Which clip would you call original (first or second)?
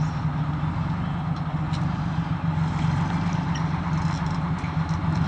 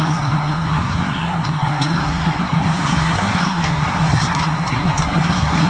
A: first